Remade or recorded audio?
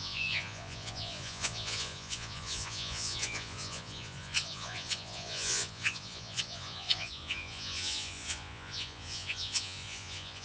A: remade